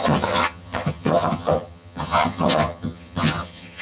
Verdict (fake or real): fake